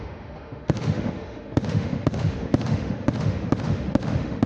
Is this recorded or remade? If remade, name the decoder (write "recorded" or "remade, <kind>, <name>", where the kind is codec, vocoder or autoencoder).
remade, autoencoder, DAC-VAE